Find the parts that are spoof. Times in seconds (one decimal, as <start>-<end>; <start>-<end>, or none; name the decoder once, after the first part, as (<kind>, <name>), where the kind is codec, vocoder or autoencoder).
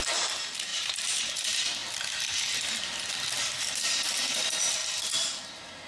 0.7-1.3 (vocoder, BigVGAN v2)